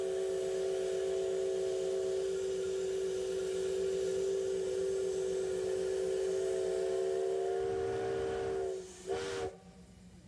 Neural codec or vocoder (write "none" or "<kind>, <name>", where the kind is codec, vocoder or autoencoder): none